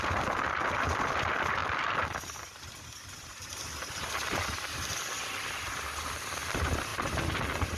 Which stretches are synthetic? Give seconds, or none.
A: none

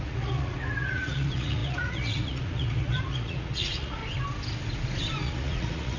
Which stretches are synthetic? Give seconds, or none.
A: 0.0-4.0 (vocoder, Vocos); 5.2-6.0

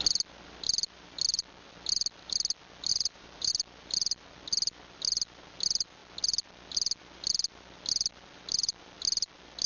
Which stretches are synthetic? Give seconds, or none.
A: 2.9-3.5 (vocoder, BigVGAN v2)

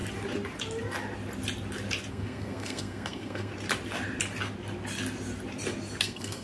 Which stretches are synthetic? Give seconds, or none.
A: 2.1-3.5 (codec, SNAC); 6.0-6.4